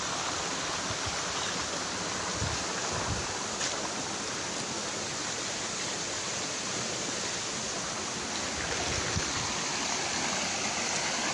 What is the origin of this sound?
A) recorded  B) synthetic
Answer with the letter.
A